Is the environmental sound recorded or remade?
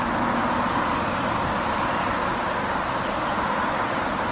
recorded